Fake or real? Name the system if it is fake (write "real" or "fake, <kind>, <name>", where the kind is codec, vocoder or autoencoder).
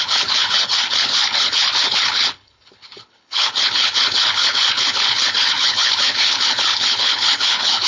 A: fake, codec, HILCodec